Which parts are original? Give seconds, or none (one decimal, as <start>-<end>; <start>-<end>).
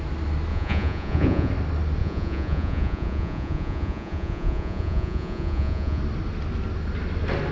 0.0-0.5; 1.5-2.0; 6.0-7.5